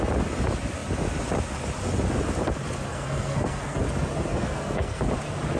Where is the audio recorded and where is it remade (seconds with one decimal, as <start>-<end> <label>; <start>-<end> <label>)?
0.0-2.9 recorded; 2.9-3.8 remade; 3.8-4.3 recorded; 4.3-5.1 remade; 5.1-5.6 recorded